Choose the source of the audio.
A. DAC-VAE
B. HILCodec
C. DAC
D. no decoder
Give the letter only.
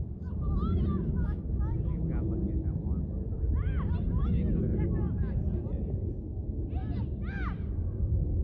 D